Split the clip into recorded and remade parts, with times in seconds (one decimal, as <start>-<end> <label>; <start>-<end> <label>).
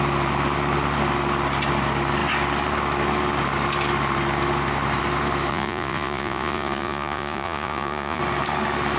0.0-5.5 recorded; 5.5-8.2 remade; 8.2-9.0 recorded